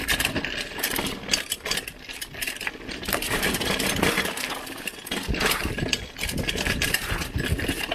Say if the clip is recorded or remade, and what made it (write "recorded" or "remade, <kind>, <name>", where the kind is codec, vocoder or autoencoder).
recorded